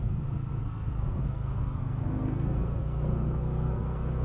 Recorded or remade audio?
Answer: remade